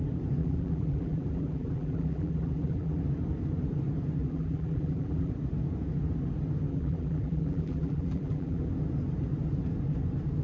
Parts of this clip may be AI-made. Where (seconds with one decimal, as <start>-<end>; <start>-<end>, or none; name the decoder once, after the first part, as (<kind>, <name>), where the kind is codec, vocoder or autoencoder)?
0.4-3.0 (vocoder, BigVGAN v2); 4.2-5.3; 6.7-8.6

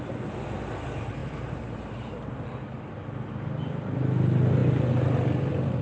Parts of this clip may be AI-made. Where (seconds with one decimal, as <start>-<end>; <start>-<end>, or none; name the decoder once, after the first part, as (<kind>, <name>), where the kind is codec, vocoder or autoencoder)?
1.2-2.1 (vocoder, BigVGAN v2)